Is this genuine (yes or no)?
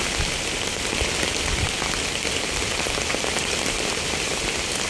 yes